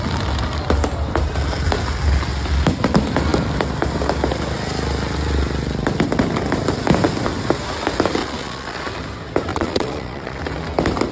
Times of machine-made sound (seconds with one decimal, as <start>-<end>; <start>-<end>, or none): 8.2-8.8; 9.5-10.4